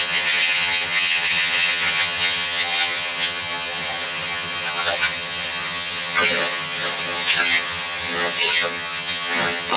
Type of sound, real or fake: fake